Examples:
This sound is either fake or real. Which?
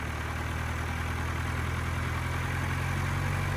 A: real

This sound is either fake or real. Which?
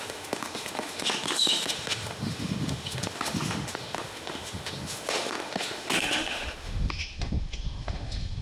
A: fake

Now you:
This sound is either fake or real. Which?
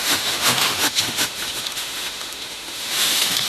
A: fake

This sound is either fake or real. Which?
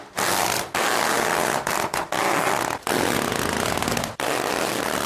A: real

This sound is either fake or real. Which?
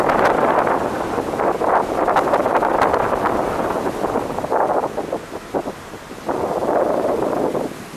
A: real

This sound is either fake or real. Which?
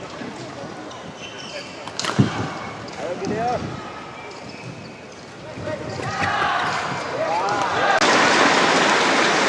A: real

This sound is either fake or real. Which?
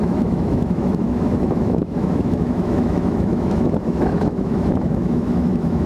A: fake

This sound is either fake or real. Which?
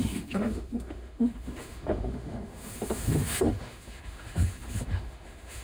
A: fake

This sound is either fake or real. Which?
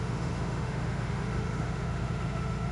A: fake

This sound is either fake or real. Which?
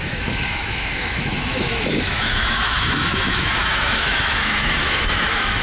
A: fake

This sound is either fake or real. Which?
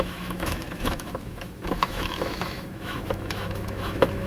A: fake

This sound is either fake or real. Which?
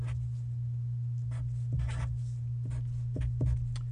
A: real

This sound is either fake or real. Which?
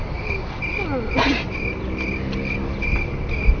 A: real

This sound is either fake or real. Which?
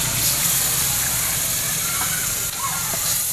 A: real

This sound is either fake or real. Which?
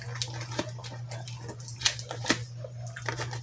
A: real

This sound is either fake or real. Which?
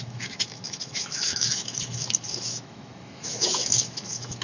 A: fake